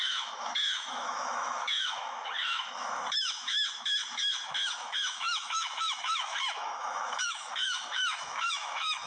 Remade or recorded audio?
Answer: remade